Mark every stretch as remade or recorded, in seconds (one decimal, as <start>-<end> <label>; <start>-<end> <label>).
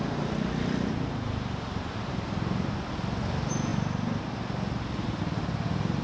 0.0-6.0 recorded